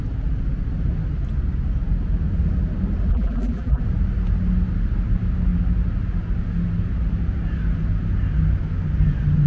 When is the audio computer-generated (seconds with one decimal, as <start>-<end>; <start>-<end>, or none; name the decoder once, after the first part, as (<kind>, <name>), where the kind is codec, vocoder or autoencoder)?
3.1-3.8 (vocoder, BigVGAN v2)